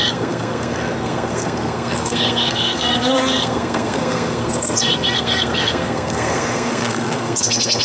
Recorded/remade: remade